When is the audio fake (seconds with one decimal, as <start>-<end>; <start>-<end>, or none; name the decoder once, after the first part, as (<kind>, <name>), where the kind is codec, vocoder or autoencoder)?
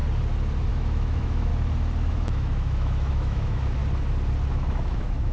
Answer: 0.7-1.5 (autoencoder, DAC-VAE); 2.1-3.8; 4.5-5.3